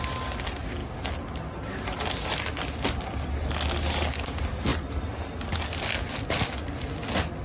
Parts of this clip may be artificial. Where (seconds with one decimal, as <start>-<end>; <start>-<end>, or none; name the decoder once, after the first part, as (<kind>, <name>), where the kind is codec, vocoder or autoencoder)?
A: none